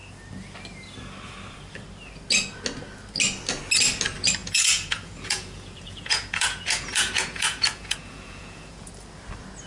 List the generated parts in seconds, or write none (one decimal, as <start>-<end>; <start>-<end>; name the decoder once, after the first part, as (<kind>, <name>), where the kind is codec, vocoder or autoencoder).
4.4-8.9 (vocoder, Vocos)